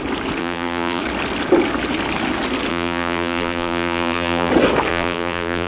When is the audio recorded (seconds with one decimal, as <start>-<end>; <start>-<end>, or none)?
0.0-0.4; 1.0-2.7; 4.5-4.9

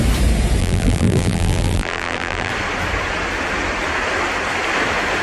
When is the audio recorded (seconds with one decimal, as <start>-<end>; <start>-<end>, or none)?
0.0-0.6; 2.5-5.2

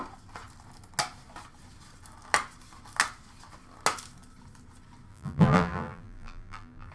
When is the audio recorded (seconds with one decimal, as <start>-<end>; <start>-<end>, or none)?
0.0-5.1

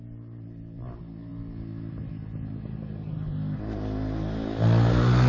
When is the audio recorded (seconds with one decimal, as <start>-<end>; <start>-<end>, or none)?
0.0-5.3

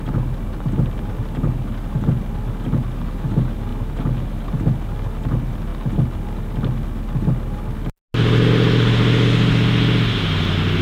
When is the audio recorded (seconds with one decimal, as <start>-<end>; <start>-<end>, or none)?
0.0-10.8